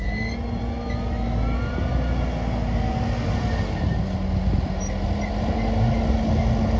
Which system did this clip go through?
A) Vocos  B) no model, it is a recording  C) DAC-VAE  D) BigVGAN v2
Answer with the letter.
B